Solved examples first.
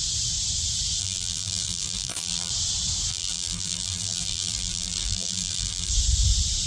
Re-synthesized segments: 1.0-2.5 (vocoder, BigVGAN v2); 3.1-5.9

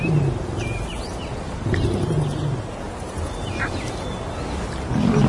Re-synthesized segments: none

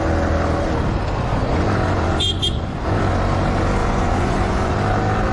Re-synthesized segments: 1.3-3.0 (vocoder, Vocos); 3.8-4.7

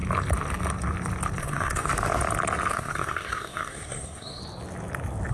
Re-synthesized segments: 1.4-1.9 (codec, SNAC); 2.7-4.4

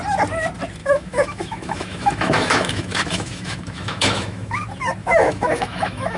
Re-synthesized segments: 0.8-4.5 (autoencoder, DAC-VAE); 5.0-6.2

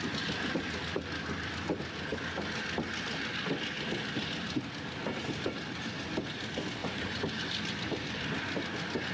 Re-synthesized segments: 6.8-7.4 (vocoder, BigVGAN v2)